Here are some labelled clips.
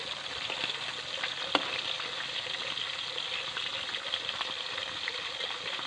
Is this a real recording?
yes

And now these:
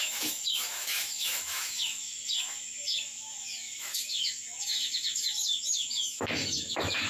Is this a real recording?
no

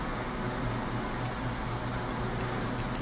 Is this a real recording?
yes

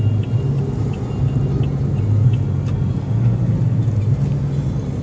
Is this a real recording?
yes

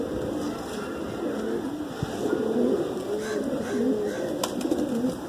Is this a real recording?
yes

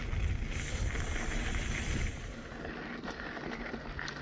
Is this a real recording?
yes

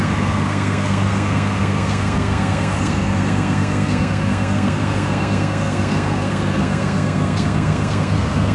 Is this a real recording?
no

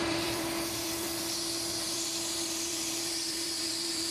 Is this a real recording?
no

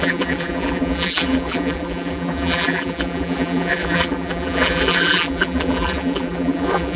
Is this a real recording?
no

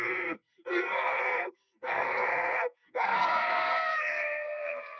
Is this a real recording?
no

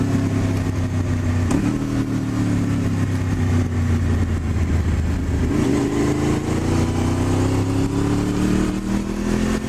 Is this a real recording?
yes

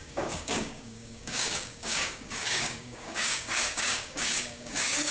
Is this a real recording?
no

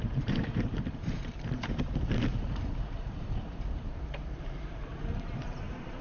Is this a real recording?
no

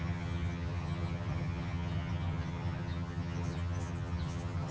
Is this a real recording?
no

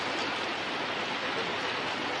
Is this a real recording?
yes